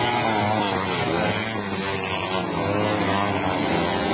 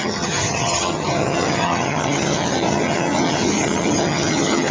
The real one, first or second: first